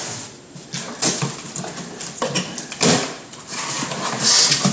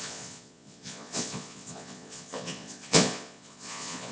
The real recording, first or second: first